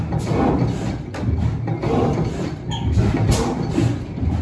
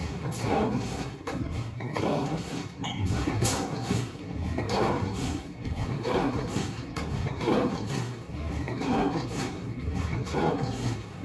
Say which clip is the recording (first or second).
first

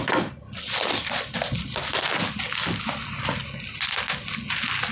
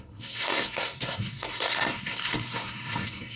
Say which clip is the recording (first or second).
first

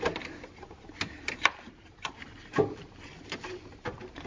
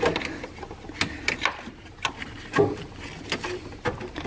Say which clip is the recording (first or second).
second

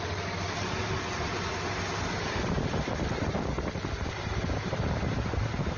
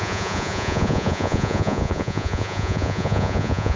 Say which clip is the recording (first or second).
first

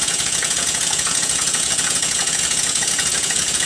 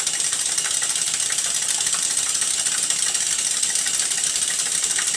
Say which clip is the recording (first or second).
second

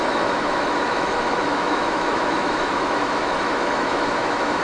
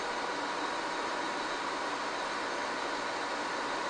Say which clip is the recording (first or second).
second